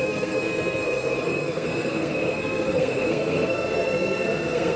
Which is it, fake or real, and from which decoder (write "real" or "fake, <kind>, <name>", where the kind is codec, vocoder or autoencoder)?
fake, codec, SNAC